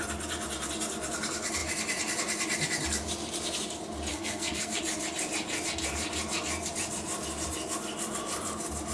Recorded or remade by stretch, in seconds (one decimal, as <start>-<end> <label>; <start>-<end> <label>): 0.0-4.1 recorded; 4.1-4.8 remade; 4.8-8.9 recorded